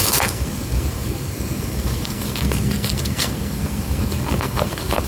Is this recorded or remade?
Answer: remade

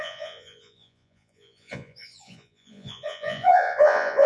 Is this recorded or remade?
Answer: remade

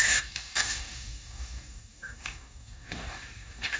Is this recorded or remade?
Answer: remade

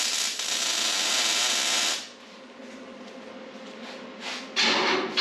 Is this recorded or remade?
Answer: recorded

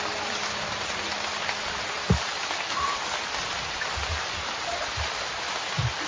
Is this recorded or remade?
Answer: recorded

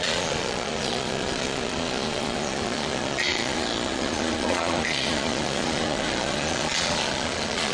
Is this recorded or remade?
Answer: remade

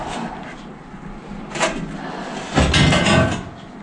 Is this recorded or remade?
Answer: recorded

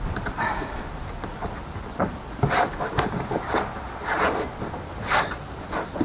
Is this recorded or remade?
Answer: recorded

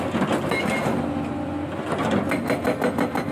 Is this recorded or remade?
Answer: recorded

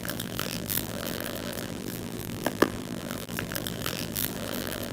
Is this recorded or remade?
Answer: remade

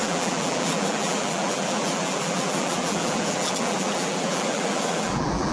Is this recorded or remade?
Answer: remade